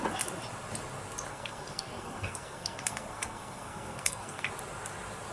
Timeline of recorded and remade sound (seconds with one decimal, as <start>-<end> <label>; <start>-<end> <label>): 0.0-1.3 recorded; 1.3-4.5 remade; 4.5-5.3 recorded

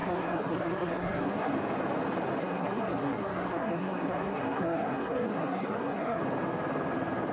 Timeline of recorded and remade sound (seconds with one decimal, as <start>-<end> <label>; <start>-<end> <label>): 0.0-1.5 remade; 1.5-2.4 recorded; 2.4-6.2 remade; 6.2-7.3 recorded

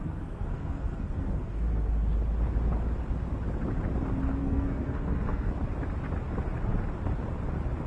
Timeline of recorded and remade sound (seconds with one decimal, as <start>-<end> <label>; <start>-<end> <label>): 0.0-1.9 remade; 1.9-4.4 recorded; 4.4-5.5 remade; 5.5-7.9 recorded